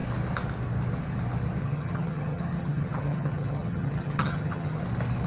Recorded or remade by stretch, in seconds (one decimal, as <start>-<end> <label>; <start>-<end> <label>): 0.0-1.6 recorded; 1.6-4.8 remade; 4.8-5.3 recorded